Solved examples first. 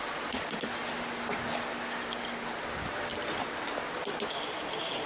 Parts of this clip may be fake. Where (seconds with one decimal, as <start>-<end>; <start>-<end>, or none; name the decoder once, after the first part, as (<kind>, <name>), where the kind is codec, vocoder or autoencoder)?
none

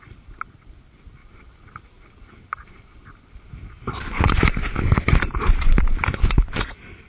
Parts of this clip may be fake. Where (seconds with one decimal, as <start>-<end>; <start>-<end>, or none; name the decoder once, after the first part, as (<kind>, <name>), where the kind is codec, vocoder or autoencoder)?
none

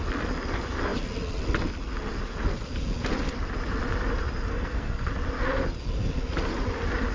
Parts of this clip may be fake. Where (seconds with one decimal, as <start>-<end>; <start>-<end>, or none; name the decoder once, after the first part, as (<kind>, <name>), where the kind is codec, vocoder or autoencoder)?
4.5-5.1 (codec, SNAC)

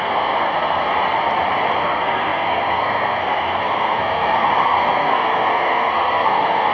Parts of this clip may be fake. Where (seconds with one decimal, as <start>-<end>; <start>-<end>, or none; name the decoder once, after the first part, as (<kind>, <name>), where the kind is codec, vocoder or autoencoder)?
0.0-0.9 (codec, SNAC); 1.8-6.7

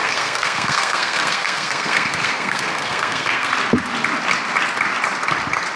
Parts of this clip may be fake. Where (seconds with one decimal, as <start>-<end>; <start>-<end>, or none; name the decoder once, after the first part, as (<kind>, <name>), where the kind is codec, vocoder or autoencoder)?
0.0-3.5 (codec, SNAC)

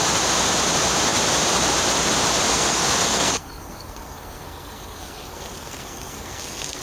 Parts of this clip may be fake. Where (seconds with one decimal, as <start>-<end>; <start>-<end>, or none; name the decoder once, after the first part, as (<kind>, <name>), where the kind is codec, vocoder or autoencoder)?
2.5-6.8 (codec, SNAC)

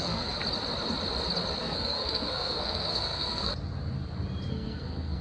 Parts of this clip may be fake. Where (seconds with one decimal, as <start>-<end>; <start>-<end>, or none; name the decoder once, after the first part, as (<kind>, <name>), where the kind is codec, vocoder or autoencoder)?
0.0-0.4 (codec, SNAC); 1.6-3.5; 4.5-5.2